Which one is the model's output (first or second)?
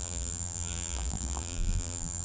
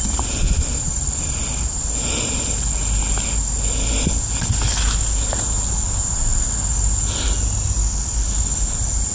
first